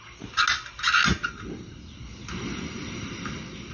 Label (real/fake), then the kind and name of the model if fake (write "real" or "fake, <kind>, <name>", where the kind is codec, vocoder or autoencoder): real